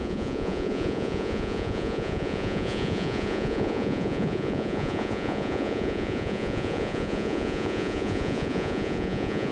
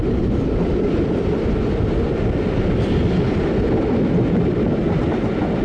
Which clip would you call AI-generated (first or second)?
first